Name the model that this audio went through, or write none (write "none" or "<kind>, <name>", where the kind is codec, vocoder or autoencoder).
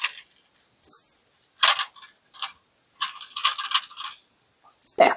none